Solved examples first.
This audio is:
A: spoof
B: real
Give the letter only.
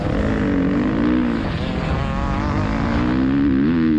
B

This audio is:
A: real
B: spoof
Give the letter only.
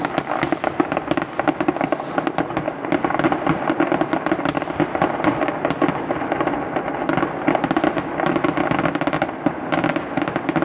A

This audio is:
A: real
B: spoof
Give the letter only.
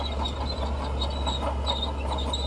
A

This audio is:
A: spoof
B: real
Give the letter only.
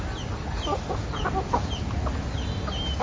B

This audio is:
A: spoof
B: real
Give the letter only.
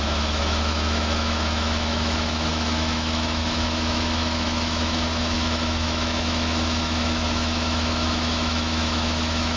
A